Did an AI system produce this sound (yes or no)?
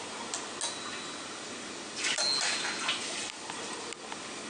no